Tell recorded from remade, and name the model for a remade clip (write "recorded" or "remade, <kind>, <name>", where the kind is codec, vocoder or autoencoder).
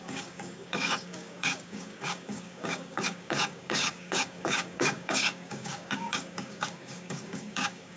remade, codec, DAC